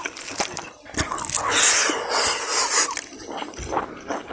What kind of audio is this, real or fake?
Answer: real